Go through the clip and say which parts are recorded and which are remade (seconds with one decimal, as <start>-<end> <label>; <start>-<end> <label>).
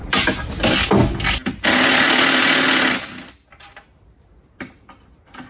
0.0-5.5 recorded